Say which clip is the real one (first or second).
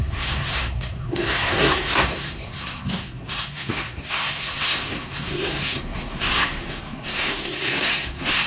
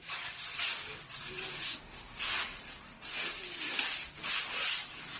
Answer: second